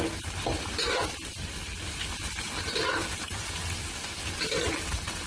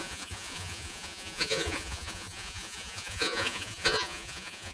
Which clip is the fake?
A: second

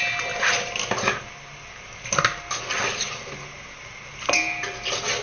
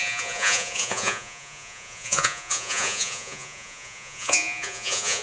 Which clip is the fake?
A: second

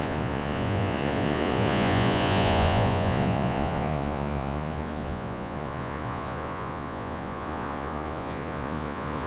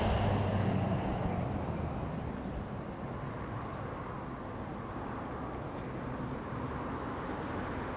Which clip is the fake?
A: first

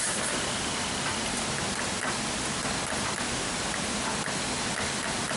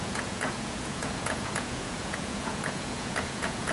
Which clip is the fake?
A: second